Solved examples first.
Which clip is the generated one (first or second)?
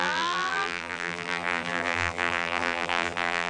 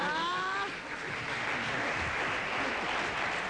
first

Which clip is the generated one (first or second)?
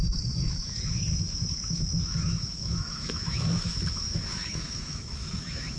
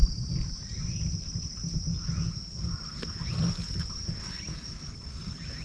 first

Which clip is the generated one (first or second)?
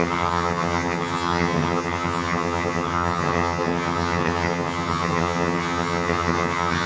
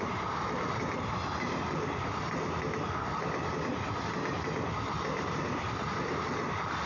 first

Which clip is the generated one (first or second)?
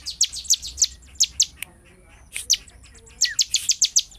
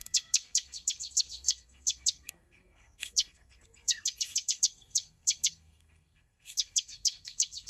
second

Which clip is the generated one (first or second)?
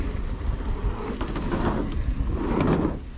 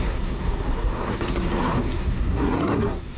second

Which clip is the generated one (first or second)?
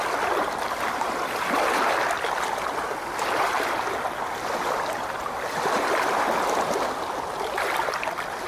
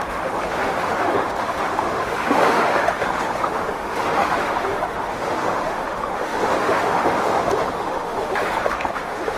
second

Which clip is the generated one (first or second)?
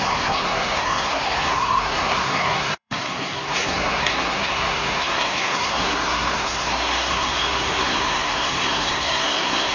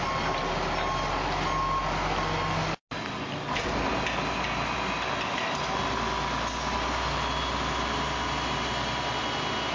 first